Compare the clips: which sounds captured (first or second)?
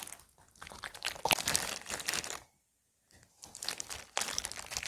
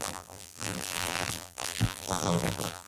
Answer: first